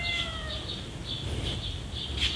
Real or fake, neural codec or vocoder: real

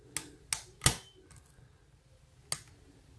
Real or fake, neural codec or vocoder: real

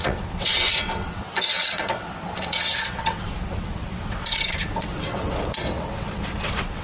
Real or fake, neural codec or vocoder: fake, vocoder, WaveNeXt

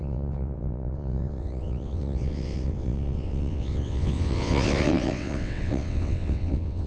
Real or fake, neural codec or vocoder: fake, vocoder, WaveNeXt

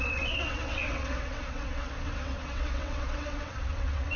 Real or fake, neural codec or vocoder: fake, vocoder, WaveNeXt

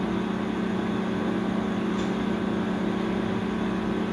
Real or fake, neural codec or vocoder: real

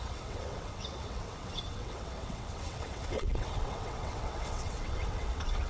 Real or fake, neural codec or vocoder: fake, vocoder, WaveNeXt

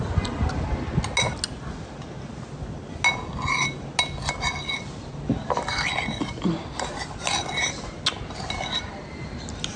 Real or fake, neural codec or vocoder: real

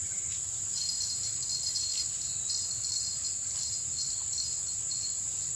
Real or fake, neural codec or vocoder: real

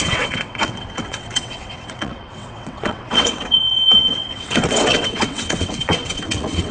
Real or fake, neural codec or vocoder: fake, vocoder, WaveNeXt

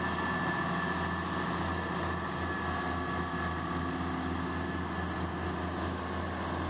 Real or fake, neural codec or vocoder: real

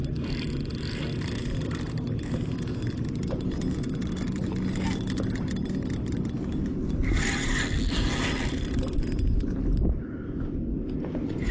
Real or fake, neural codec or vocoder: real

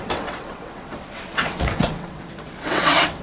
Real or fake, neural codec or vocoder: fake, vocoder, WaveNeXt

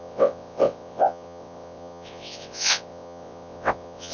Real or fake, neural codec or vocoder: fake, vocoder, WaveNeXt